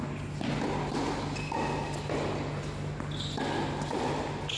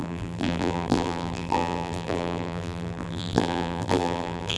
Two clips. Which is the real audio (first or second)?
first